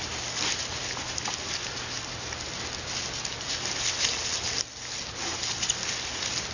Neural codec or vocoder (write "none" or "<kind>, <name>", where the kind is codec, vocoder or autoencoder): none